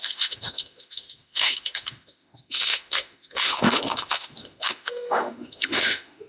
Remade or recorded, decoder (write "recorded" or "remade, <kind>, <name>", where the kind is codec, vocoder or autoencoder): remade, autoencoder, DAC-VAE